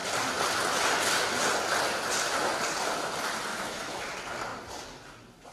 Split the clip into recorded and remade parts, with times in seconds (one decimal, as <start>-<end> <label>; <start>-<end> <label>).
0.0-3.5 recorded; 3.5-4.0 remade; 4.0-5.5 recorded

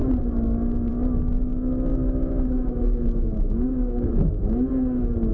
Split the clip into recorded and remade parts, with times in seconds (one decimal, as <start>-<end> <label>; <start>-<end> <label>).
0.0-1.9 recorded; 1.9-4.7 remade; 4.7-5.3 recorded